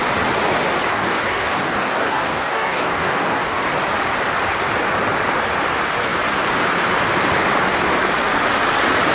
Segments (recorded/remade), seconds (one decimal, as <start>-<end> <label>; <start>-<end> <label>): 0.0-0.9 recorded; 0.9-3.7 remade; 3.7-9.1 recorded